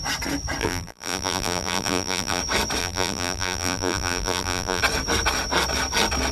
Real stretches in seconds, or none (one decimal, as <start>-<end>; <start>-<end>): 0.0-0.6; 2.4-2.8; 4.8-6.3